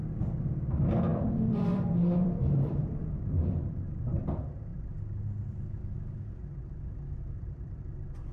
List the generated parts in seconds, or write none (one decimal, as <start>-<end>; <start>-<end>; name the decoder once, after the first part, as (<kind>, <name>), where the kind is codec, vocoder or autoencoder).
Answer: 1.1-3.0 (vocoder, BigVGAN v2); 6.4-7.8